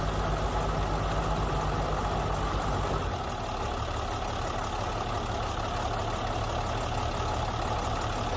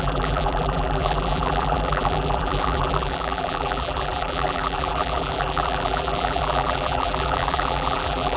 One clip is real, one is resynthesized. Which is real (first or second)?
first